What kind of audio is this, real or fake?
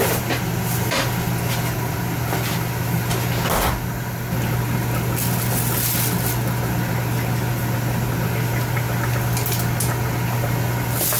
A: real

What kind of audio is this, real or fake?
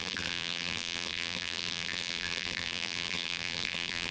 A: fake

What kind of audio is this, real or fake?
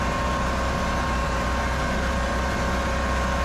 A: real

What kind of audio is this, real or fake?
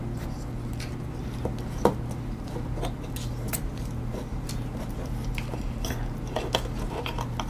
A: real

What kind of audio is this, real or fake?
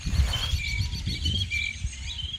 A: fake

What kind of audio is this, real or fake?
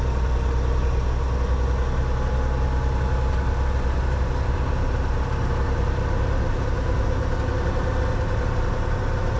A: real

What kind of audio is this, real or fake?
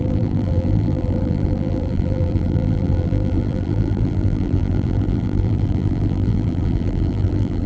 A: fake